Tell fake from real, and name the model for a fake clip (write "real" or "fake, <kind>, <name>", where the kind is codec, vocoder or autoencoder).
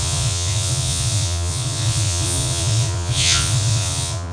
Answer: fake, vocoder, Vocos